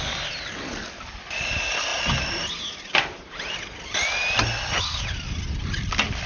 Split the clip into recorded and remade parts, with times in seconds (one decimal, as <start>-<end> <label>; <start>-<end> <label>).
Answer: 0.0-6.3 recorded